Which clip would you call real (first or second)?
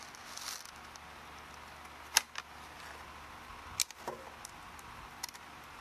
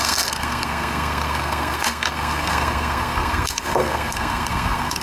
first